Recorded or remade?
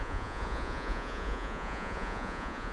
remade